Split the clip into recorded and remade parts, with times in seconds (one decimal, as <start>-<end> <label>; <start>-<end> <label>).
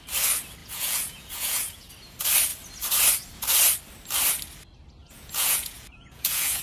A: 0.0-0.6 recorded; 0.6-1.9 remade; 1.9-5.0 recorded; 5.0-6.6 remade